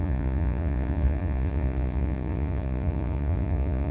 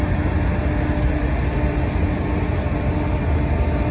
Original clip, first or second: second